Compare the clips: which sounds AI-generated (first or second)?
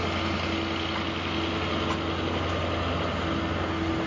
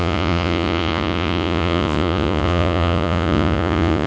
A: second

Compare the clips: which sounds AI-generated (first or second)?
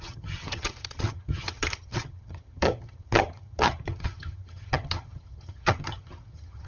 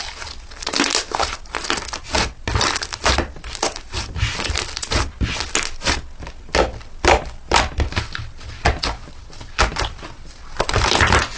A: first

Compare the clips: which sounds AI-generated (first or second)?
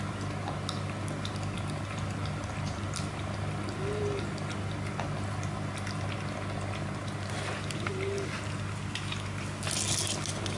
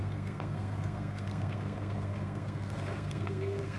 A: second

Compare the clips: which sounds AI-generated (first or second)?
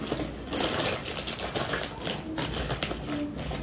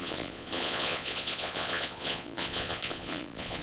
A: second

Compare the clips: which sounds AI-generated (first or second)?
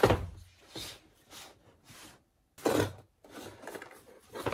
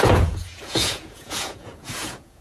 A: second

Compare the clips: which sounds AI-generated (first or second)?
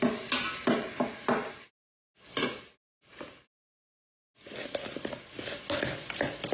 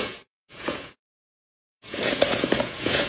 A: second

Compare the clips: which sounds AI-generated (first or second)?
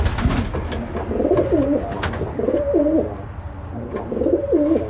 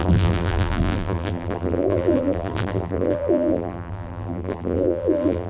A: second